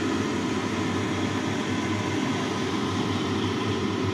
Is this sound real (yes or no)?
yes